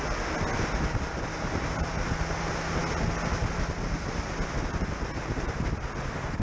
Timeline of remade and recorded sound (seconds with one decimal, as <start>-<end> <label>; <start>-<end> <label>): 0.0-6.4 recorded